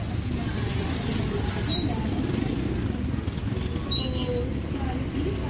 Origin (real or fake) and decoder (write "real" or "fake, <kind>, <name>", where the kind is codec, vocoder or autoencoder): real